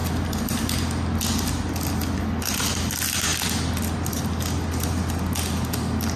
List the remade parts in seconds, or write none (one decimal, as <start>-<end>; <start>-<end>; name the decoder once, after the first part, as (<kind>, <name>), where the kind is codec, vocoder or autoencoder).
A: none